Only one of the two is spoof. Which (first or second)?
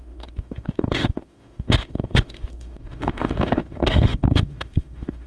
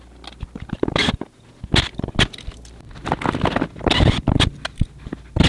first